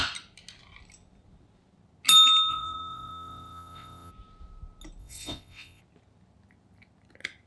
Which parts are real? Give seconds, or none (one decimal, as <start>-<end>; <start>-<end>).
0.0-2.5; 4.1-5.0; 5.8-7.5